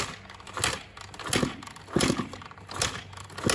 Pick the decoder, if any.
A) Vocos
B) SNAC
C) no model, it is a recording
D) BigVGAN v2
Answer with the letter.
C